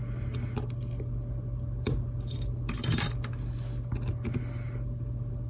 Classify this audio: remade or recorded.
recorded